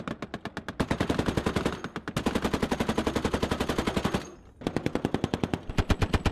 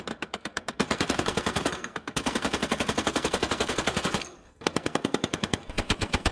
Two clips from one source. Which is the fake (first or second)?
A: second